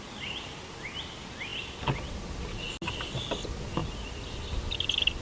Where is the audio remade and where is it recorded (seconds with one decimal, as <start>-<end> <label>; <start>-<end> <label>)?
0.0-5.2 recorded